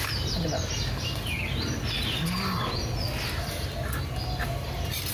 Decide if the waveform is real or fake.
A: real